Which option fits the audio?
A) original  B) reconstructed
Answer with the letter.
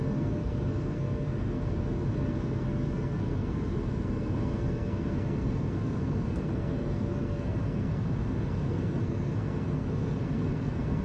B